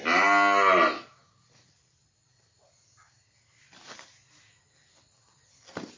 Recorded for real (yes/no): yes